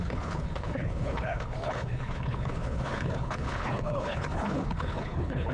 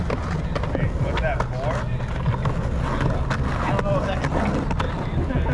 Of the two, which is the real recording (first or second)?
second